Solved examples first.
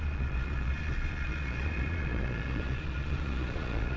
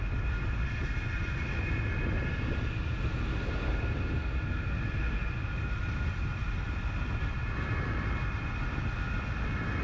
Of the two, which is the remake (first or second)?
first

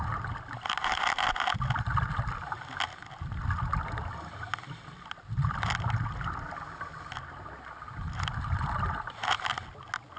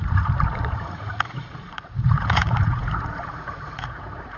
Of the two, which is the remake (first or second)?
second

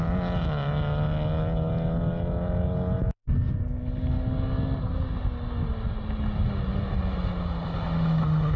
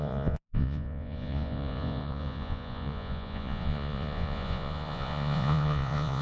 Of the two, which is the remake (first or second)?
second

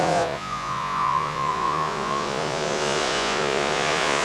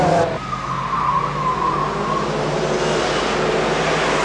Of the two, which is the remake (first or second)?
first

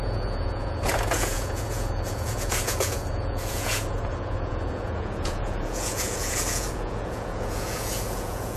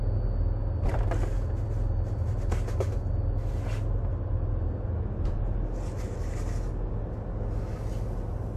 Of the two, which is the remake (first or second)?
first